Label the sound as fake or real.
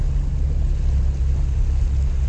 real